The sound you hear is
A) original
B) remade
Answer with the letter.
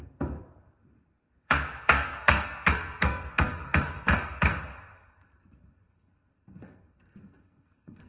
B